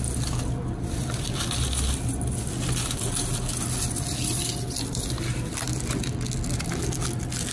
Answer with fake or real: real